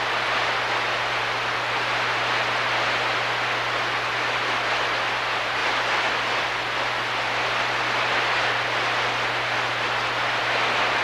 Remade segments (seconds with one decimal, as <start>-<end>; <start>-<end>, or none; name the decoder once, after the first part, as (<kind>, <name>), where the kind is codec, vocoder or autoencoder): none